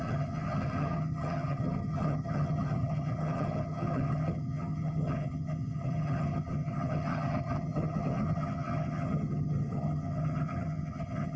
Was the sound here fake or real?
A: fake